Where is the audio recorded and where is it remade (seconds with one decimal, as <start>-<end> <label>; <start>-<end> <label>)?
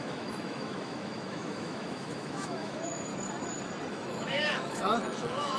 0.0-3.1 remade; 3.1-3.9 recorded; 3.9-5.6 remade